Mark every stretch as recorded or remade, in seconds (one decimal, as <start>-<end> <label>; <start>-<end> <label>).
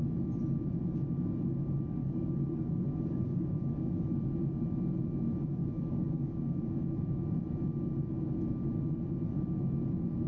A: 0.0-2.0 recorded; 2.0-3.5 remade; 3.5-5.6 recorded; 5.6-6.4 remade; 6.4-10.3 recorded